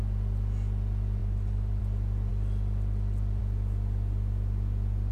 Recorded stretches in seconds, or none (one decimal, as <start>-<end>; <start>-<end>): 0.0-1.2; 1.8-5.1